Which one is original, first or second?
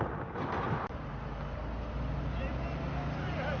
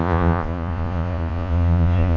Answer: first